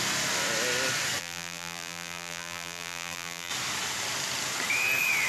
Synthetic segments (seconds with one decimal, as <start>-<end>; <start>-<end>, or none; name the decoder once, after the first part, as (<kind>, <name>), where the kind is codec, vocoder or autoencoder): 1.2-3.5 (vocoder, BigVGAN v2)